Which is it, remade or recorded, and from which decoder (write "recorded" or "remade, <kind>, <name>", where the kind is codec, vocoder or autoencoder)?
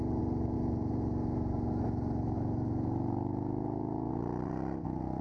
recorded